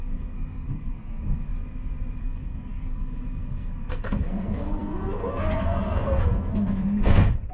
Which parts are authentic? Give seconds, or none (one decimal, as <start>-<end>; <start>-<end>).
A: 1.5-2.2

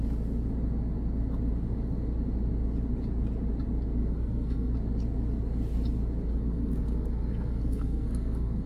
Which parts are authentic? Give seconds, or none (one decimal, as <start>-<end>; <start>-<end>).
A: 0.0-4.0; 4.7-6.3

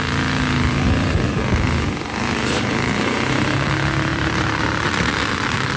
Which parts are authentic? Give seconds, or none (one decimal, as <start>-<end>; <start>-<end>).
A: 0.0-4.1; 5.3-5.8

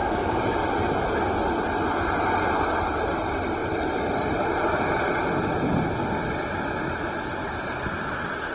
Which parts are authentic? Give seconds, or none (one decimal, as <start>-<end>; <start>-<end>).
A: 0.6-3.6; 4.6-8.5